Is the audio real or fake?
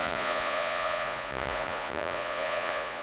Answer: fake